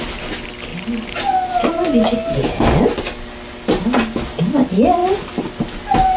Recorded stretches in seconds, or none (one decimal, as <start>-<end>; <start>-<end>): 0.0-6.2